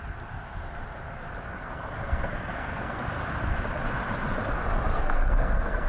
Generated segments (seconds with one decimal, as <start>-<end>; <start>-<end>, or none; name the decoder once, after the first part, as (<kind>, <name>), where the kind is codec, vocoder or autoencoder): 1.6-3.1 (codec, SNAC); 4.9-5.9

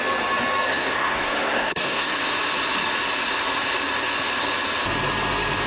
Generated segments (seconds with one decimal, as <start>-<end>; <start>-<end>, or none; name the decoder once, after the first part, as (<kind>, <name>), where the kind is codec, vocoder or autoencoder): 0.7-2.1 (codec, SNAC)

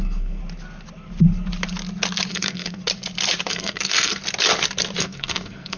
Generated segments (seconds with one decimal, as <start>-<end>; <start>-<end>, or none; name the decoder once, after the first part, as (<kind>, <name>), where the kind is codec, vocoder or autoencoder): 0.0-0.4 (codec, SNAC); 2.3-2.8; 3.5-4.2; 5.0-5.8

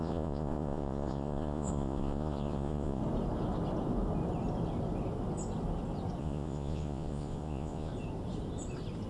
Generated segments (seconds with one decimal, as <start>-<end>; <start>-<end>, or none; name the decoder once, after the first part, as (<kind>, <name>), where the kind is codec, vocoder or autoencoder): 0.0-3.0 (vocoder, Vocos); 6.2-7.9